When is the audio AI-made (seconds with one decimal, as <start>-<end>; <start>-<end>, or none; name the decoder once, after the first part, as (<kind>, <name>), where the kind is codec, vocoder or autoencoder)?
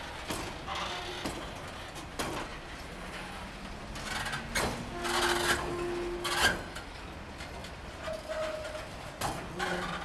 none